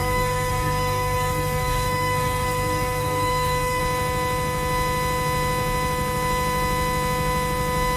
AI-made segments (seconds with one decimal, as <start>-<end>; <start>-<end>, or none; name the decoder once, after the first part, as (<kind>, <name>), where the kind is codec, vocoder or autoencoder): 0.0-3.8 (codec, SNAC)